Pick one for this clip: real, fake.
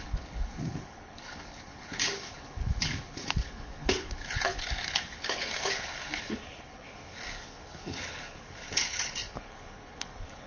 fake